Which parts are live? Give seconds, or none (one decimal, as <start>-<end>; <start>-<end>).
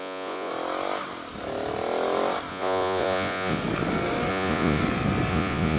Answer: 0.5-2.5; 3.6-4.3; 4.8-5.3